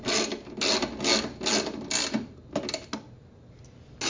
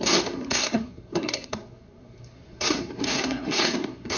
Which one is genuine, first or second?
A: first